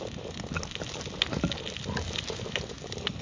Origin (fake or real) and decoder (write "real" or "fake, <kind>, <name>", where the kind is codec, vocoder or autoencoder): real